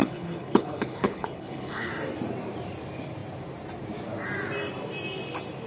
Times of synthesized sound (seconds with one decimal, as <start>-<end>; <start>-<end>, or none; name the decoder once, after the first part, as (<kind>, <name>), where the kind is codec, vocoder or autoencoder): 0.0-1.9 (codec, HILCodec)